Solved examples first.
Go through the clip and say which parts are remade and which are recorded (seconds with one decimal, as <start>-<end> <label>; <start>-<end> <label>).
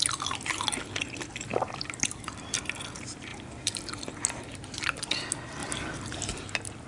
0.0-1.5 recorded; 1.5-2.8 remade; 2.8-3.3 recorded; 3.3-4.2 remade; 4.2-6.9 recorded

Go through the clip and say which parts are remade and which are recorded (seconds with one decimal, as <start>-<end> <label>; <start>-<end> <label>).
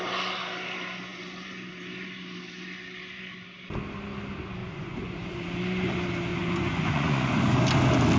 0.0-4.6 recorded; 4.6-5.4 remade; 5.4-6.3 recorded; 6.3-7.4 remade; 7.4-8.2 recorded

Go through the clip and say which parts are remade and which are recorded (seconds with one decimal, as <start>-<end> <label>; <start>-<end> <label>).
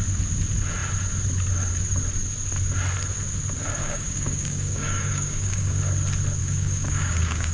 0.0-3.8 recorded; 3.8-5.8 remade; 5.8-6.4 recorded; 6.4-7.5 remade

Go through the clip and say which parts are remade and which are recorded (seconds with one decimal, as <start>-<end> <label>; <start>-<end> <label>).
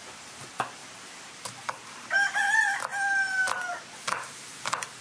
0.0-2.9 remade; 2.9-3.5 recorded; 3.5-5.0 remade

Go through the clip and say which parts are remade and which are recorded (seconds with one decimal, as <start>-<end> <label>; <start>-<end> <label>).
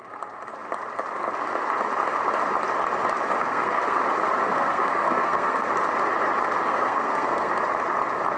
0.0-3.4 recorded; 3.4-4.0 remade; 4.0-4.5 recorded; 4.5-5.7 remade; 5.7-6.7 recorded; 6.7-7.5 remade; 7.5-8.4 recorded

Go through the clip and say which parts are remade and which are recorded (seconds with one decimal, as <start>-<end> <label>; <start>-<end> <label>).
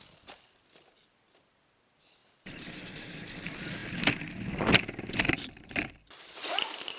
0.0-7.0 recorded